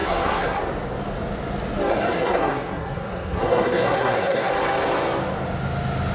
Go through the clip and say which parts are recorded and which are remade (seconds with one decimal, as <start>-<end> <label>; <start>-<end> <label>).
0.0-0.6 remade; 0.6-1.9 recorded; 1.9-4.5 remade; 4.5-6.1 recorded